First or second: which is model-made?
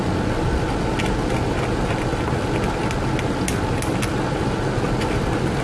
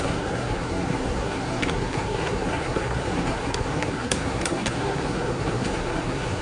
second